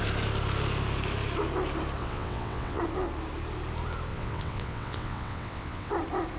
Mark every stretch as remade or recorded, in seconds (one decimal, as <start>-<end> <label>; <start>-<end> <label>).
0.0-2.0 recorded; 2.0-2.8 remade; 2.8-4.1 recorded; 4.1-5.9 remade; 5.9-6.4 recorded